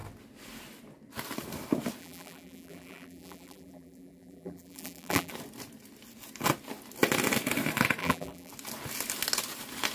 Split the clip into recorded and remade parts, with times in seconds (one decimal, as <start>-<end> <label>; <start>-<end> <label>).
0.0-2.0 recorded; 2.0-5.3 remade; 5.3-8.0 recorded; 8.0-8.5 remade; 8.5-9.9 recorded